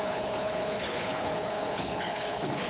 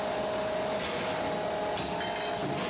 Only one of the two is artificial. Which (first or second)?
first